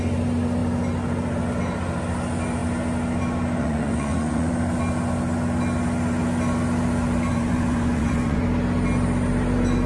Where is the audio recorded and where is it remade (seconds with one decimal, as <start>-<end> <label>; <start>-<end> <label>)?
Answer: 0.0-3.6 recorded; 3.6-4.5 remade; 4.5-7.3 recorded; 7.3-8.4 remade; 8.4-9.9 recorded